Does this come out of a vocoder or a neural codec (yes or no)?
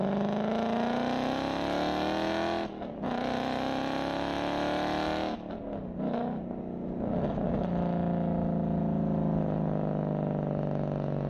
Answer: no